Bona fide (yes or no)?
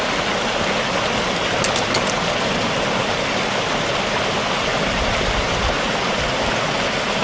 yes